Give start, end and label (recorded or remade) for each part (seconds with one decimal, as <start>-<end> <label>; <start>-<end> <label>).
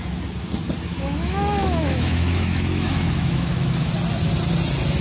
0.0-0.9 recorded; 0.9-3.9 remade; 3.9-5.0 recorded